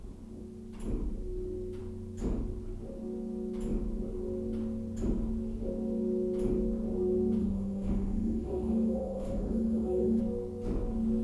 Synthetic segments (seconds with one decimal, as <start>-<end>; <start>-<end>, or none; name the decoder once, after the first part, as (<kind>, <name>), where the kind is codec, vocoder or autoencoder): 7.4-10.2 (autoencoder, DAC-VAE)